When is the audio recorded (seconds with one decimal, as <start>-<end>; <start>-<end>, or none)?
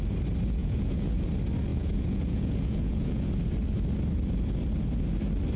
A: 0.0-0.6; 1.2-1.7; 3.3-5.6